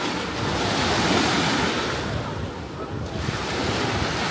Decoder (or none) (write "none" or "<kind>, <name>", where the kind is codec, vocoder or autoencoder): none